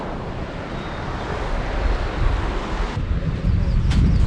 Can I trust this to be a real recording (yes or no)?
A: yes